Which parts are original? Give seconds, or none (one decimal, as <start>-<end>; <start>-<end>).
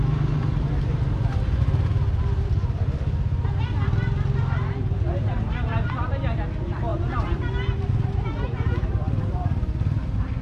0.0-10.4